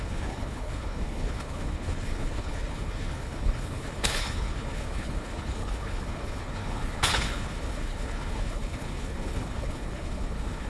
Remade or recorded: remade